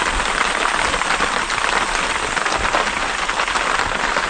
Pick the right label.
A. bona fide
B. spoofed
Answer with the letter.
A